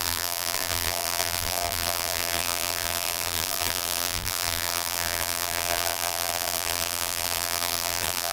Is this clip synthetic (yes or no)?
yes